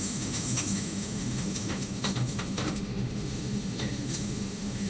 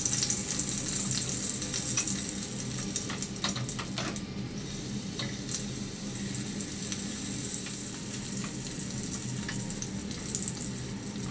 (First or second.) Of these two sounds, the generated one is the first